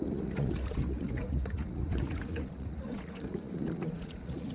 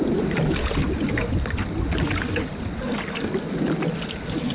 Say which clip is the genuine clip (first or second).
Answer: second